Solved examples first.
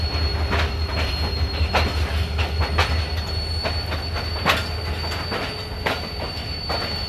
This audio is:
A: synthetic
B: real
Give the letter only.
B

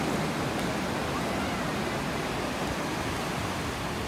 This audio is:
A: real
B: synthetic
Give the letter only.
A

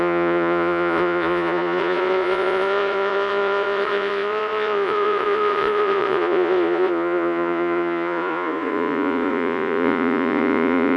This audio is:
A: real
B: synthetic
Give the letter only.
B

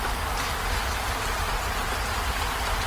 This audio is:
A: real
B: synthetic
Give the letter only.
A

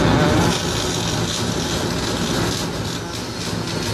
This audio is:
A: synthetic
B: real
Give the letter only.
B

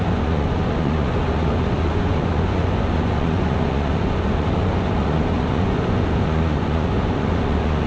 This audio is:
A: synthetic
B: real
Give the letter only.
A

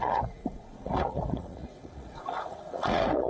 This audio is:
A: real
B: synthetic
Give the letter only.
B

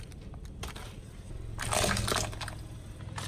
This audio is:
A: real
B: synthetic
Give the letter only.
A